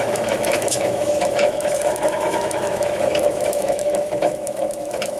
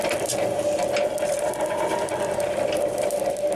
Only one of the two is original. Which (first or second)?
second